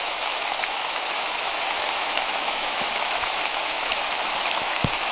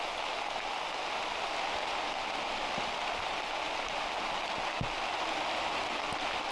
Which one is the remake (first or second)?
first